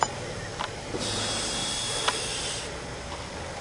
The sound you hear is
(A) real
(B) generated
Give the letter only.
B